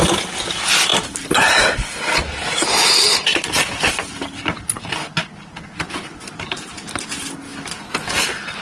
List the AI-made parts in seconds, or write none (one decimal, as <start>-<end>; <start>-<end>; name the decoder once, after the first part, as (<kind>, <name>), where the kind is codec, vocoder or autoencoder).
none